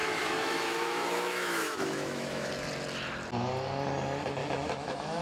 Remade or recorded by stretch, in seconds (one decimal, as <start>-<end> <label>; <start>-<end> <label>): 0.0-2.5 remade; 2.5-4.4 recorded; 4.4-5.2 remade